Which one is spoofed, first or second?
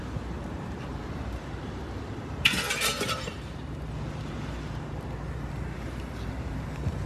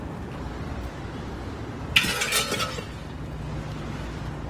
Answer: first